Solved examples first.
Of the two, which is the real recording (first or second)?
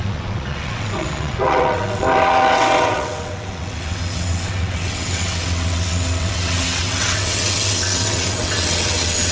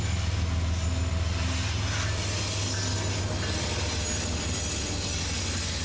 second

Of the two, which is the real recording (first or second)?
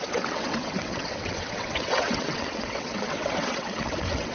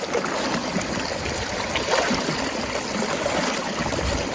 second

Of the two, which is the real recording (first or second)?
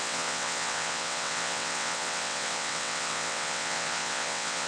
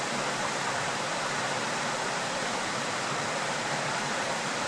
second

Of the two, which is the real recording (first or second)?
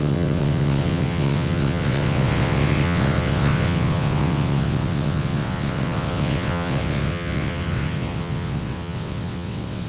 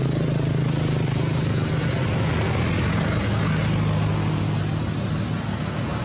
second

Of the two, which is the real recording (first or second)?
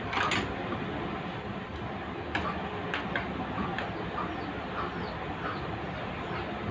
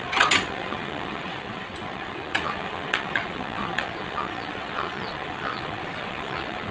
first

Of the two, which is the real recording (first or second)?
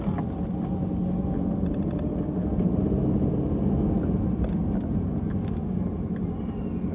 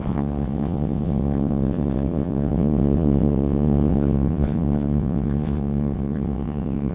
first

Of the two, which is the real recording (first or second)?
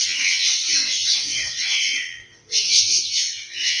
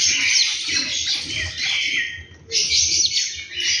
second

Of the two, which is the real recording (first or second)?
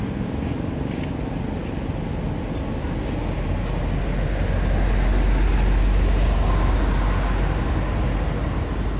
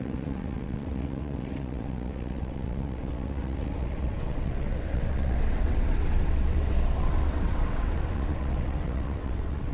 first